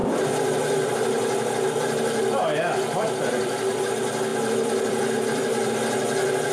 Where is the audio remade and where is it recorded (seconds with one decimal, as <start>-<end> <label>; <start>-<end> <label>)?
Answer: 0.0-3.9 remade; 3.9-4.3 recorded; 4.3-5.7 remade; 5.7-6.5 recorded